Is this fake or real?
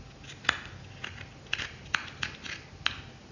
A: real